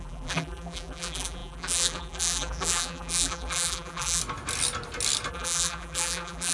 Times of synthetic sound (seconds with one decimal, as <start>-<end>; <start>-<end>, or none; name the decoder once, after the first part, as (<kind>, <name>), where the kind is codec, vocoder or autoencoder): 0.0-4.2 (vocoder, BigVGAN v2); 5.3-6.5